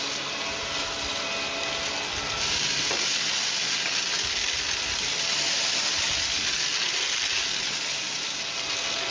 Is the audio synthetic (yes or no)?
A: no